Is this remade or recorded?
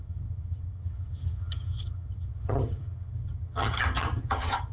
remade